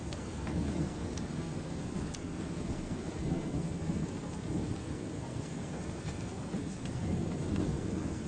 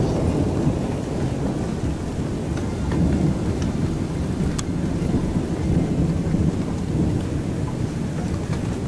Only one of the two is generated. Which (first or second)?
first